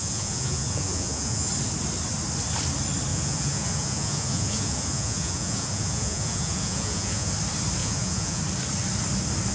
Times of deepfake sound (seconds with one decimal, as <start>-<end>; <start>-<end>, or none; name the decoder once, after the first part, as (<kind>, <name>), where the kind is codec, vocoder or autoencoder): 0.0-1.5 (vocoder, Vocos); 3.1-7.3; 7.8-8.4